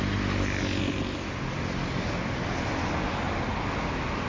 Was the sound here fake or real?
real